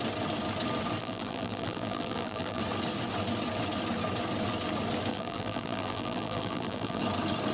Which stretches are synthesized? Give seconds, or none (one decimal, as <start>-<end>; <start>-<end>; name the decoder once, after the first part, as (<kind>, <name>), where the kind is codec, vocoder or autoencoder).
1.0-2.6 (vocoder, BigVGAN v2); 5.1-7.0